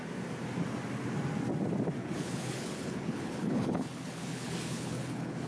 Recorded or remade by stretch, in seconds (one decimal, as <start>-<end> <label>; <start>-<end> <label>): 0.0-2.0 recorded; 2.0-5.5 remade